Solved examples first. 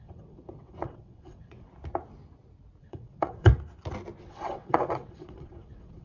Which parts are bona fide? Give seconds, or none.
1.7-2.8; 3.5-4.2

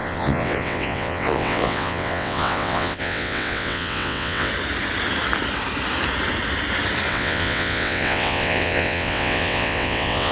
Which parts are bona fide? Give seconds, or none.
4.5-7.1

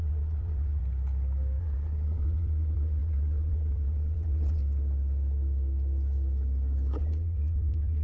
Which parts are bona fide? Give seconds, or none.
0.8-1.6; 4.6-7.0

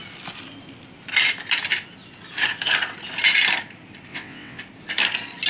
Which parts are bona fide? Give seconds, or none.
0.0-4.1; 4.6-5.5